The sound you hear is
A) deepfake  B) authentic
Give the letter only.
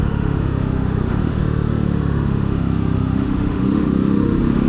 A